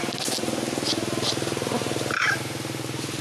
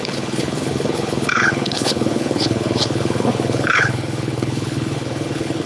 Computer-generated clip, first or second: second